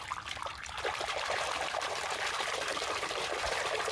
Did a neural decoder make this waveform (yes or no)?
yes